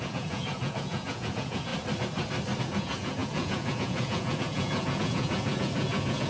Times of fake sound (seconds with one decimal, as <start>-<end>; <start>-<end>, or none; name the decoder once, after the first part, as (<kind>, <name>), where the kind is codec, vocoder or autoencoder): 0.0-1.7 (vocoder, Vocos); 2.6-6.3